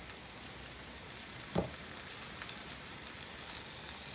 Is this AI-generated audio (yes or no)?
no